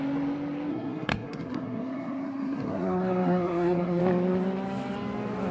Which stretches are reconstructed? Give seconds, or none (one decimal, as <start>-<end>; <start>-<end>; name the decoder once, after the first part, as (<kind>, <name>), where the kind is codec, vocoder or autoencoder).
0.7-4.0 (codec, SNAC)